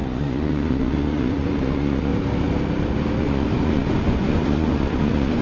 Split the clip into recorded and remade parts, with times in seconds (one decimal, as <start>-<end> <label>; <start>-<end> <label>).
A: 0.0-2.1 remade; 2.1-3.2 recorded; 3.2-5.4 remade